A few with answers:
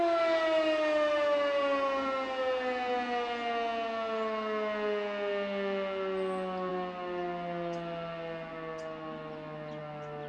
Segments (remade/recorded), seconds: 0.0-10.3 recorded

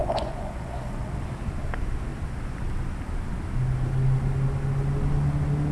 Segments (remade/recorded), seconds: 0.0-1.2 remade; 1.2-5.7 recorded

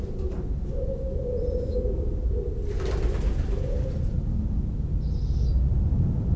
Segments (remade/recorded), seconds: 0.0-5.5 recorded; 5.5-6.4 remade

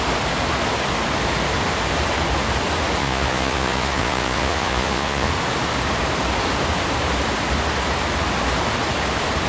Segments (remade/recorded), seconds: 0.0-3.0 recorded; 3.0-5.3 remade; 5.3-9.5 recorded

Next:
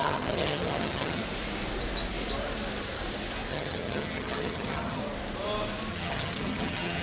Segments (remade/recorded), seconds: 0.0-1.2 remade; 1.2-3.5 recorded; 3.5-5.0 remade; 5.0-5.9 recorded; 5.9-7.0 remade

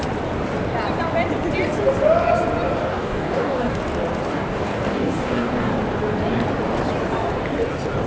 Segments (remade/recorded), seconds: 0.0-2.9 recorded; 2.9-3.8 remade; 3.8-4.3 recorded; 4.3-5.7 remade; 5.7-8.1 recorded